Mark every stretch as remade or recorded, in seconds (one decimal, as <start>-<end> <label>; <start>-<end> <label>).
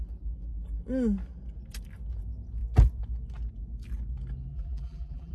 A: 0.0-4.5 recorded; 4.5-5.3 remade